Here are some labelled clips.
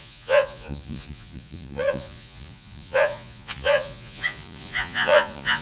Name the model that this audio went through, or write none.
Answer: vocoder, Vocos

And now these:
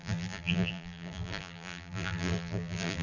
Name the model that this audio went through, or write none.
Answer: vocoder, BigVGAN v2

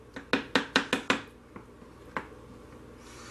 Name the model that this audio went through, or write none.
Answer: none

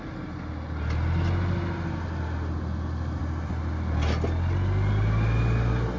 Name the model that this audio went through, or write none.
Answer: none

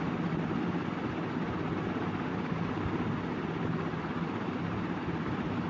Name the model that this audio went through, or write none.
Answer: none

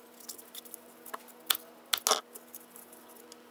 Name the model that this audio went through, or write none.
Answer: none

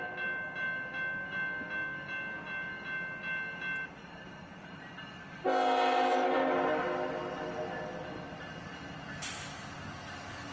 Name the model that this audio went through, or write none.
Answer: none